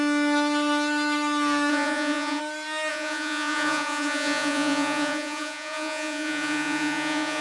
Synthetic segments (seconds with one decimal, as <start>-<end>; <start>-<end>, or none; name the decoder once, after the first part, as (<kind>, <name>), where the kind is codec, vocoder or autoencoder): 1.7-2.4 (vocoder, Vocos); 2.9-7.4